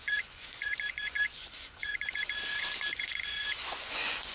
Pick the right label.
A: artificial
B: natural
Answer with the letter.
A